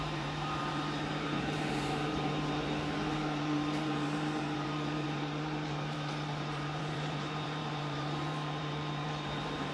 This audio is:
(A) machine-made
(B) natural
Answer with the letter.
A